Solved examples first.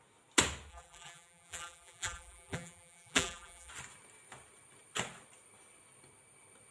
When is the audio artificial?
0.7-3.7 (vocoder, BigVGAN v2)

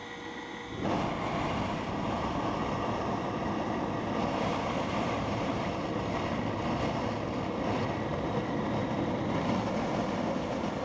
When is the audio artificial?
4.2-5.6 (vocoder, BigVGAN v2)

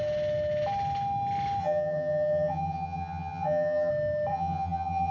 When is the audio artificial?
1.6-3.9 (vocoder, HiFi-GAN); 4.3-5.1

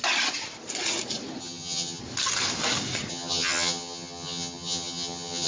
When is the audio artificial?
1.4-2.0 (vocoder, HiFi-GAN); 3.1-5.5